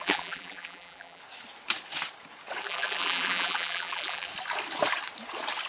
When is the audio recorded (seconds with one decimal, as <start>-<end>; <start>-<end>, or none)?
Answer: 1.2-2.6; 4.3-5.7